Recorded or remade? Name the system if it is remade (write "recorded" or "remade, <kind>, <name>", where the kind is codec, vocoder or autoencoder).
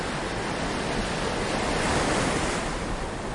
recorded